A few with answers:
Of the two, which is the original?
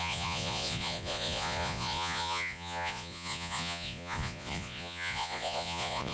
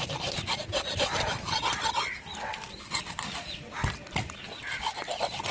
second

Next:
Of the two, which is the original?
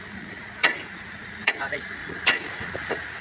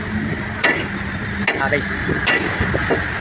second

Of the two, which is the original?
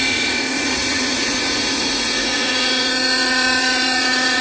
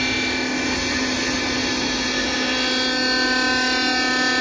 second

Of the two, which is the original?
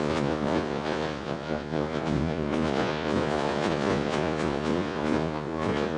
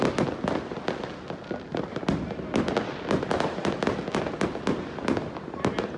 second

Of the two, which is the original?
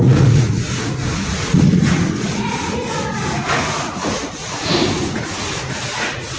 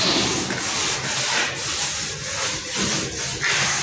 second